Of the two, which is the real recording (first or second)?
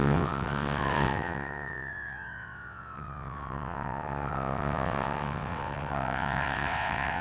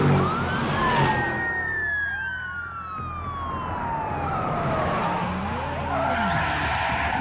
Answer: second